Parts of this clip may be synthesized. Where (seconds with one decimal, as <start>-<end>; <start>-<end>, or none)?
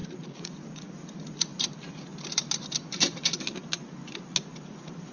0.0-1.5; 4.6-5.1